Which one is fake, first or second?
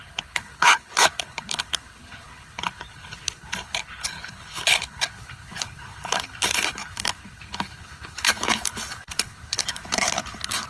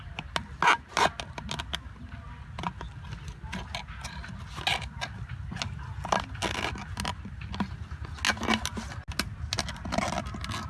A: first